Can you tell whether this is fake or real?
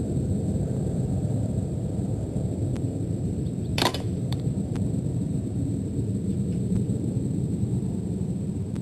fake